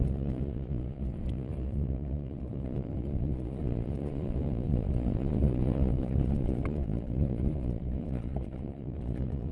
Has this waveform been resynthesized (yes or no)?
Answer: yes